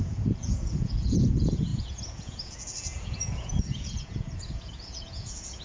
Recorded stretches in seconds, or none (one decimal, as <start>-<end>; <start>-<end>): none

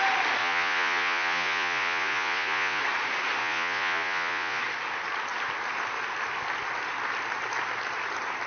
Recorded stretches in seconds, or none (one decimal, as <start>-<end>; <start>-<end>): 0.0-0.4; 2.8-3.4; 4.6-8.5

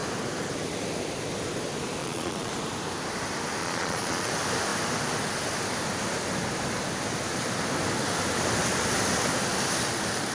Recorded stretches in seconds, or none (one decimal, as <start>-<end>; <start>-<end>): 0.0-2.0; 2.5-3.6; 4.3-10.3

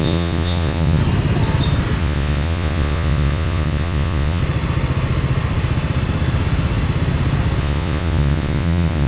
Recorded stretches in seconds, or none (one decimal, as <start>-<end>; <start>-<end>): 1.0-2.0; 4.4-7.6

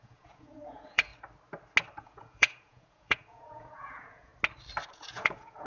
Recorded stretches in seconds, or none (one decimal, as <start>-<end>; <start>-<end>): 1.1-2.0; 4.3-4.9